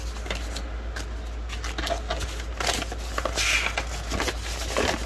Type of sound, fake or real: real